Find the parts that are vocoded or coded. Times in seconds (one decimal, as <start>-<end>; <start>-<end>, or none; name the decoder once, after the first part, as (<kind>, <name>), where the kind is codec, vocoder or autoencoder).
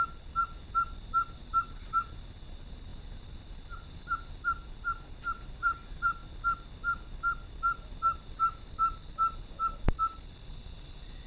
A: none